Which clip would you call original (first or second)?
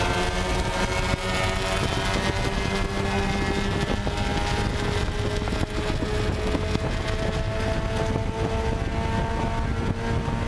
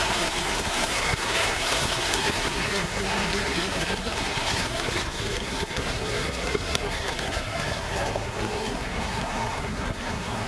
first